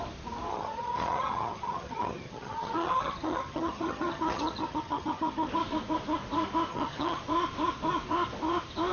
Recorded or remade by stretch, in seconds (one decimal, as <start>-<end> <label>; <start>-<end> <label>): 0.0-0.5 recorded; 0.5-5.5 remade; 5.5-6.7 recorded; 6.7-7.2 remade; 7.2-8.9 recorded